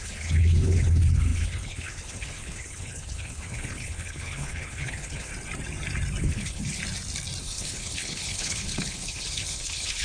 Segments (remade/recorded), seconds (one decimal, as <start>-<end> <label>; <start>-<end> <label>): 0.0-5.3 remade; 5.3-6.2 recorded; 6.2-6.8 remade; 6.8-7.4 recorded; 7.4-10.0 remade